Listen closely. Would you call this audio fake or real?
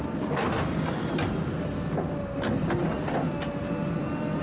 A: real